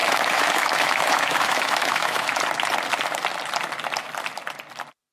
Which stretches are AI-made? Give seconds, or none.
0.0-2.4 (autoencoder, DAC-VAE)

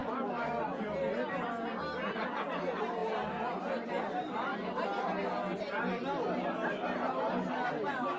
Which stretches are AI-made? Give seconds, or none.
0.0-0.5 (autoencoder, DAC-VAE)

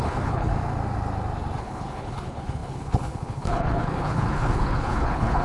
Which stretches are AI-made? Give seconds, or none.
0.0-0.5 (codec, HILCodec); 1.6-5.4

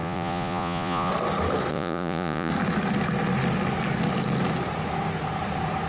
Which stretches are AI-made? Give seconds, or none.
0.0-1.1 (vocoder, Vocos); 1.7-2.5

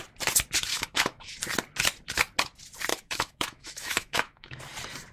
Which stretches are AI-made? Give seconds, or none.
0.7-1.3 (autoencoder, DAC-VAE); 2.9-4.6